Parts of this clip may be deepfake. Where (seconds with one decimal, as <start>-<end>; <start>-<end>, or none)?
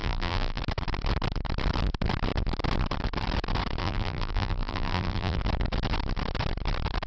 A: 0.0-0.6; 3.8-5.4